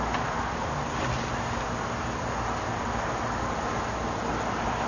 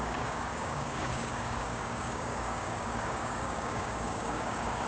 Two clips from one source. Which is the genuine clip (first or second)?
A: first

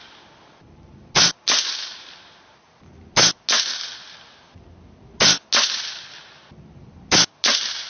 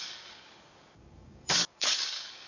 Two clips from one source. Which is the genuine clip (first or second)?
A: first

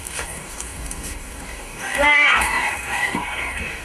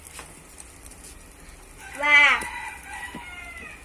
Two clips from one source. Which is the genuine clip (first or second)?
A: second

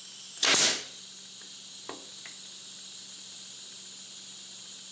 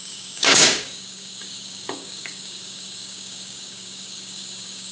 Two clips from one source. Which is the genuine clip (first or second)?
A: first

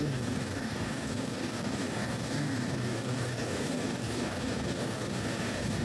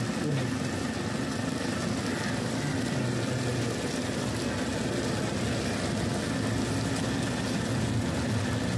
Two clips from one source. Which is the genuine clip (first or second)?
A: second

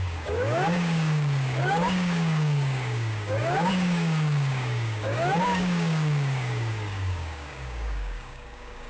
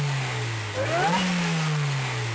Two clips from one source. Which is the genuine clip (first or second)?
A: second